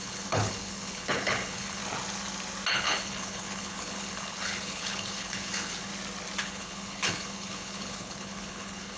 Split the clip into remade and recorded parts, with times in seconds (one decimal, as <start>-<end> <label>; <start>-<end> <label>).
0.0-1.8 remade; 1.8-2.7 recorded; 2.7-5.9 remade; 5.9-6.4 recorded; 6.4-9.0 remade